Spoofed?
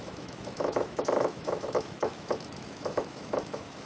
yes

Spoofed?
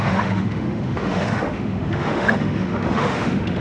yes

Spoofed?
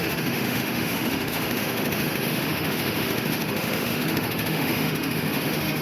yes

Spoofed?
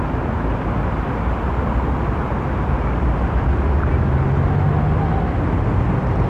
no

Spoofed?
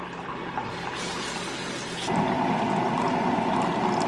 no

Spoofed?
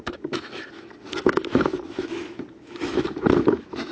yes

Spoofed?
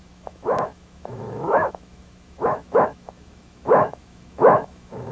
yes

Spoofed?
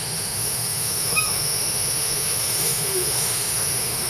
yes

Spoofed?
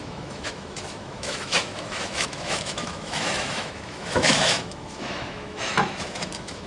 yes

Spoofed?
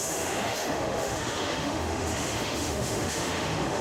yes